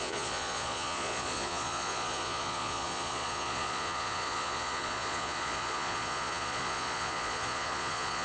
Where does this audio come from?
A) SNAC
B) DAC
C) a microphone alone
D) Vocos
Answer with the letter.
D